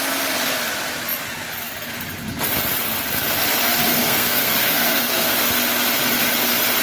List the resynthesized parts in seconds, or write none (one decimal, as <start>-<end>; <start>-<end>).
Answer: 3.9-5.3